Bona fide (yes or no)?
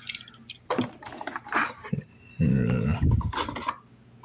yes